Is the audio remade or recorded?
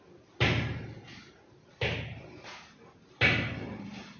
recorded